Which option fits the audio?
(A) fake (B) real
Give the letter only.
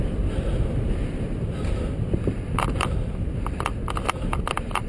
B